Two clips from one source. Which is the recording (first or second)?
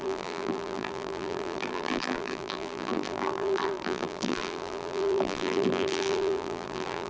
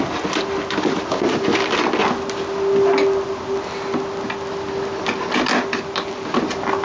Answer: second